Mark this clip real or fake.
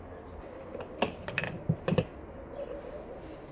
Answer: real